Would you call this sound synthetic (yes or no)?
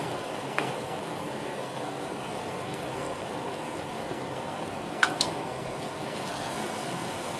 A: yes